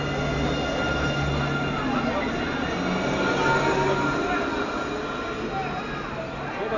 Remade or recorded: recorded